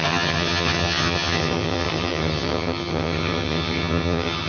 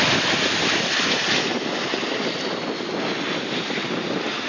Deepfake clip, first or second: first